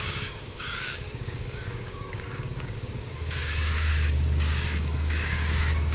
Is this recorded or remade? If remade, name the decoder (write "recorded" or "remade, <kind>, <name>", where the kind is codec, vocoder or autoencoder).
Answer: remade, codec, DAC